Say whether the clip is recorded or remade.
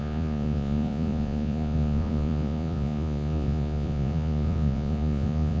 remade